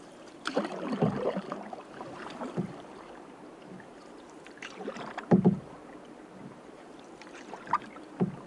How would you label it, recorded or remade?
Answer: remade